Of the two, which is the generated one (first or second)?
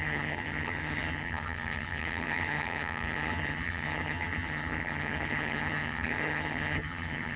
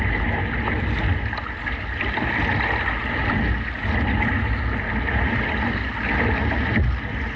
first